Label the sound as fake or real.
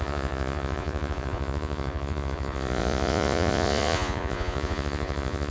fake